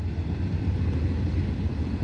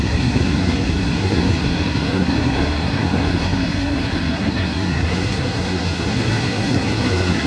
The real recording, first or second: first